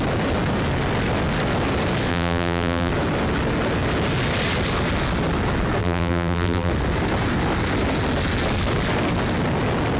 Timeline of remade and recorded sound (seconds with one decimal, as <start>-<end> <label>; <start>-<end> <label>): 0.0-2.1 recorded; 2.1-2.9 remade; 2.9-5.8 recorded; 5.8-6.7 remade; 6.7-10.0 recorded